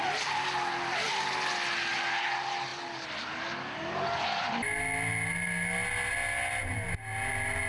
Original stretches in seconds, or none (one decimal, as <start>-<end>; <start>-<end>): 0.0-7.7